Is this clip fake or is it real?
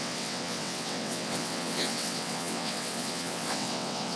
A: fake